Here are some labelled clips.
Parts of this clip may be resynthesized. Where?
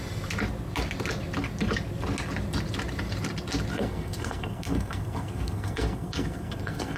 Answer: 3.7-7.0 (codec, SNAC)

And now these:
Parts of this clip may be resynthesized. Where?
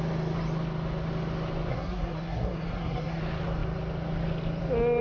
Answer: 1.7-3.2 (codec, SNAC)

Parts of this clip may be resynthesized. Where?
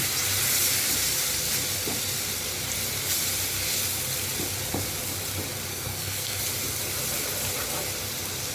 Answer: 5.7-6.4 (codec, SNAC)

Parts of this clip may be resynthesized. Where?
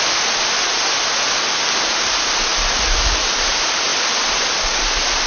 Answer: none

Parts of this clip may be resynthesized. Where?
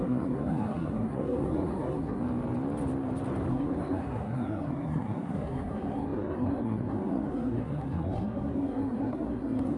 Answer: 0.0-2.2 (codec, SNAC); 3.5-9.8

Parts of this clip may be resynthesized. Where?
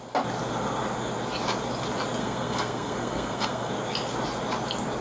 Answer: 2.2-3.7 (codec, SNAC)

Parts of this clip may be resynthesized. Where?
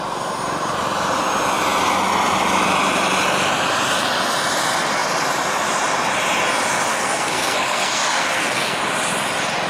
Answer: 6.9-8.8 (codec, SNAC)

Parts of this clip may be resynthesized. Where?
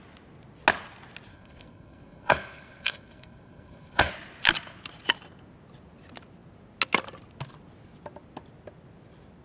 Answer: 1.3-4.1 (codec, SNAC)